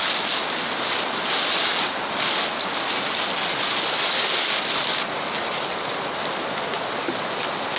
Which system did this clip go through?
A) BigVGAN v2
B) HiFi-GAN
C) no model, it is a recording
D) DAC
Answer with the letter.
C